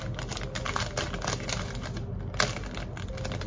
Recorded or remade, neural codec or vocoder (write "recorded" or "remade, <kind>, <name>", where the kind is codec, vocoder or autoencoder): recorded